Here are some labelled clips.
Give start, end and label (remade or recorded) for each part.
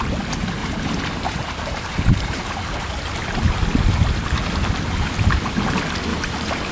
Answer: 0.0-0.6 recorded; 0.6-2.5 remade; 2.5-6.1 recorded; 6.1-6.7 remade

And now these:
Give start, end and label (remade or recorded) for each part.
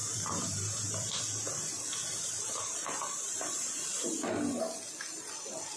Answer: 0.0-1.2 remade; 1.2-2.0 recorded; 2.0-4.6 remade; 4.6-5.8 recorded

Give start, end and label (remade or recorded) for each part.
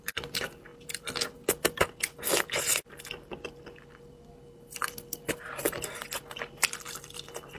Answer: 0.0-0.7 remade; 0.7-5.3 recorded; 5.3-7.6 remade